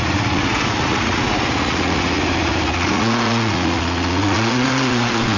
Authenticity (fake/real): fake